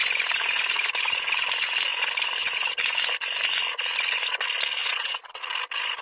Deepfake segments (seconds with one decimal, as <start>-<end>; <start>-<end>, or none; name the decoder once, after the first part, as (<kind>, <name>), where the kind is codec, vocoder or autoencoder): 4.8-5.4 (vocoder, Vocos)